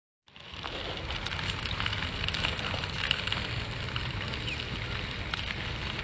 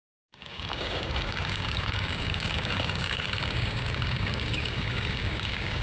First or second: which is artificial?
second